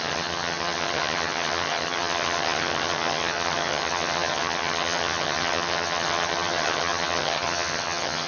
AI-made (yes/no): yes